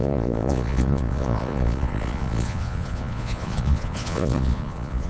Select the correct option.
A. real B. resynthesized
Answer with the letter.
B